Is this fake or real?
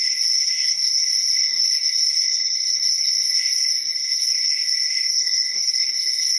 fake